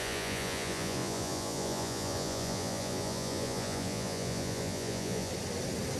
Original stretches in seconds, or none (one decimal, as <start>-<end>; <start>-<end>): 5.3-6.0